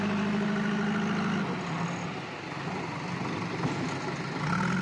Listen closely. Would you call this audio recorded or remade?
recorded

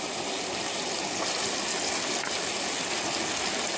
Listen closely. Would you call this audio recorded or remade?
recorded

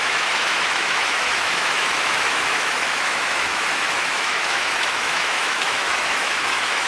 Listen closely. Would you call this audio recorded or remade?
remade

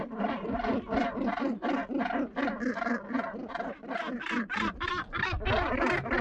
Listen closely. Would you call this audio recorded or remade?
recorded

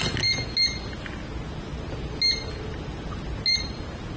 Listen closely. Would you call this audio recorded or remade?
recorded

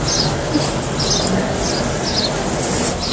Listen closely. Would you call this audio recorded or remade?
recorded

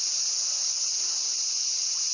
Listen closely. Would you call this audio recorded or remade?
recorded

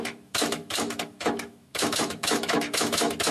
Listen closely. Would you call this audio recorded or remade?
remade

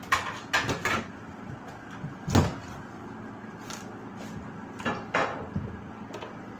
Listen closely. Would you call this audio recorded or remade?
recorded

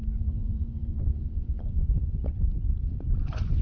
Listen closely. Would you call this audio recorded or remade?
remade